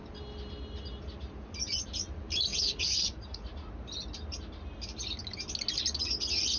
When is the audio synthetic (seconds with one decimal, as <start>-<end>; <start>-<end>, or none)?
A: 2.5-3.7

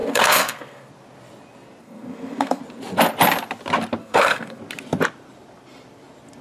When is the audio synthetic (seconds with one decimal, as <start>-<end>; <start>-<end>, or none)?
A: 0.0-0.9; 1.8-2.6; 4.0-4.6

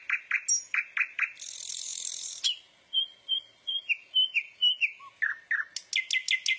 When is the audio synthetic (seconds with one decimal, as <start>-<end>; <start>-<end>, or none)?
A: none

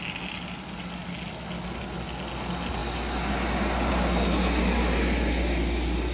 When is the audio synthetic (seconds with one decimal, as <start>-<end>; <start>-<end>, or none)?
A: none

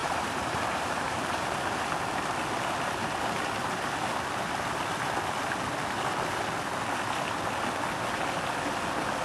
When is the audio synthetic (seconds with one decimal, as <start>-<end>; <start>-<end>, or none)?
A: 0.0-1.6

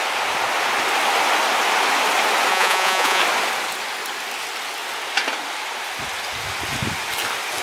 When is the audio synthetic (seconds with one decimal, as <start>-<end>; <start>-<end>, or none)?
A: 2.5-3.2

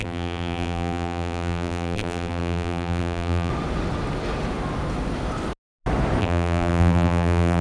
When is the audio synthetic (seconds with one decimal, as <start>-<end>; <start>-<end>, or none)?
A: 0.0-3.5; 6.2-7.6